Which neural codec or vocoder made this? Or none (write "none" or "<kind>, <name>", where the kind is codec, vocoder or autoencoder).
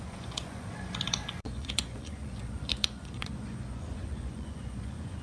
vocoder, Vocos